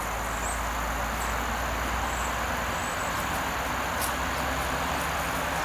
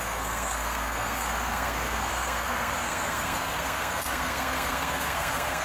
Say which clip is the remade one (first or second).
second